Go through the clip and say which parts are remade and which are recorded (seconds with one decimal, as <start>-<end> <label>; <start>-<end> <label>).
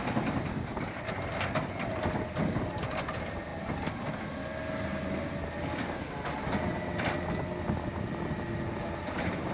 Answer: 0.0-9.5 recorded